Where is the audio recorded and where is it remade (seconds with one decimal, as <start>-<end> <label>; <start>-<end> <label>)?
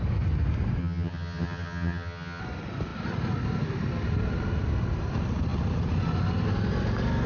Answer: 0.0-0.8 recorded; 0.8-2.4 remade; 2.4-7.3 recorded